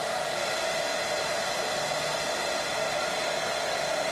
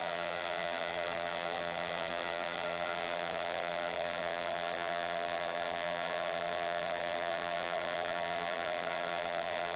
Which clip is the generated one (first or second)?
second